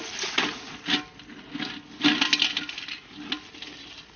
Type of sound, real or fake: real